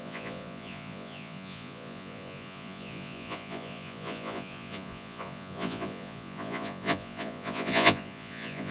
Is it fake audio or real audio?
fake